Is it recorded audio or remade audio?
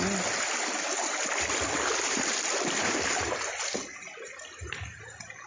recorded